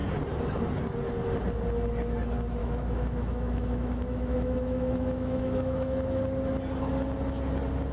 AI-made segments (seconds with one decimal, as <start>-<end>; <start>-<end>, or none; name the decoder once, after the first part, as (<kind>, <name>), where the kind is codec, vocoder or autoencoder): 2.6-6.2 (autoencoder, DAC-VAE)